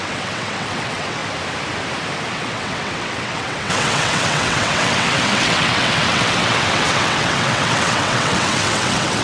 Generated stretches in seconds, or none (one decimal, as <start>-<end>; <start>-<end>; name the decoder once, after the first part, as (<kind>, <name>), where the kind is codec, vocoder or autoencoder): 0.0-1.2 (vocoder, WaveNeXt); 2.3-9.2